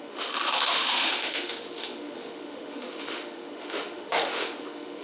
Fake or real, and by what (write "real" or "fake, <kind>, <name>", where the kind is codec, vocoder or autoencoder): fake, autoencoder, DAC-VAE